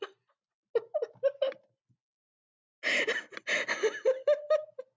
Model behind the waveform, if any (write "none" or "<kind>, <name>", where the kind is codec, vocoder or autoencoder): none